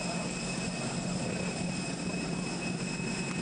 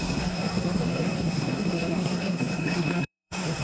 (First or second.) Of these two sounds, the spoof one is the second